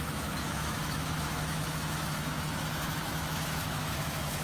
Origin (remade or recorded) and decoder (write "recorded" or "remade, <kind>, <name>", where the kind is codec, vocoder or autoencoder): remade, autoencoder, DAC-VAE